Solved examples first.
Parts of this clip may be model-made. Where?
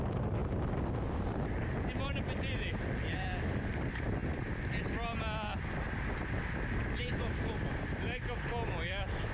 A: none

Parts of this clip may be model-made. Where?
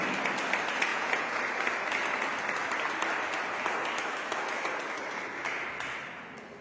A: 0.9-1.4 (vocoder, Vocos)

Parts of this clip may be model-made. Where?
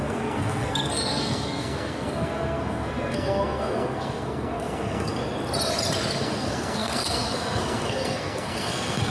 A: 0.0-5.2 (codec, SNAC); 6.2-9.1